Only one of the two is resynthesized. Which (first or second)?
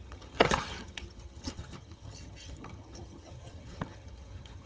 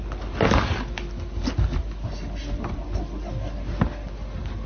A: first